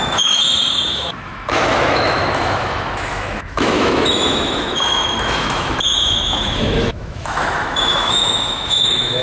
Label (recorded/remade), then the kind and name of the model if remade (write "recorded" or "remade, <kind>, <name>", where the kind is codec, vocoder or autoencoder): remade, autoencoder, DAC-VAE